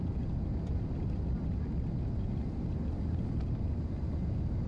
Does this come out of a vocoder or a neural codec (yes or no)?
no